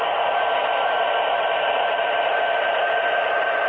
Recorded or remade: remade